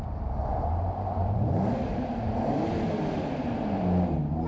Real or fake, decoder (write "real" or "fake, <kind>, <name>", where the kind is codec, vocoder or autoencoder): real